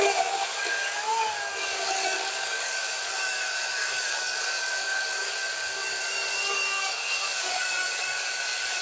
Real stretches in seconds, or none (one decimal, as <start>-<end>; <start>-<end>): none